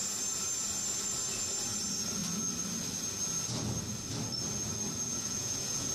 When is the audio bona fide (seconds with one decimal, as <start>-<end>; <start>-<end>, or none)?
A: 0.0-5.1

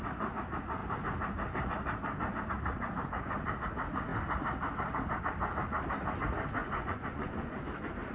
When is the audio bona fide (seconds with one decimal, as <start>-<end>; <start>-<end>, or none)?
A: 0.0-6.6; 7.6-8.1